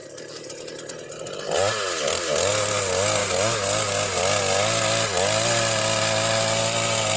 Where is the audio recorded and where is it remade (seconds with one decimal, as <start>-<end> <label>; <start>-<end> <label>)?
0.0-7.2 recorded